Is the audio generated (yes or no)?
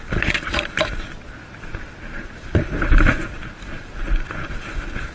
no